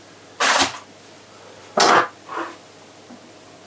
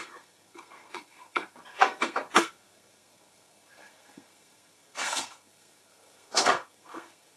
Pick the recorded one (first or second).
first